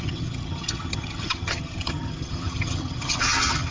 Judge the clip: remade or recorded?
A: remade